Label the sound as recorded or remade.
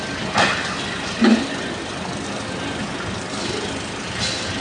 recorded